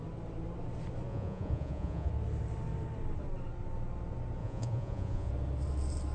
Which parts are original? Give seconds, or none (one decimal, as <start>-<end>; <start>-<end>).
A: 0.0-1.1; 2.1-4.4; 5.3-6.1